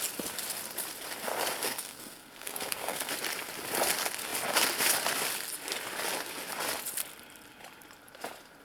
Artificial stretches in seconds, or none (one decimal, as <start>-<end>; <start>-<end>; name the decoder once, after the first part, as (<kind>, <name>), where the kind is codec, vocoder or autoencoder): 1.6-3.1 (codec, SNAC)